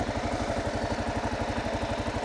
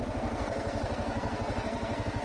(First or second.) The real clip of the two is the first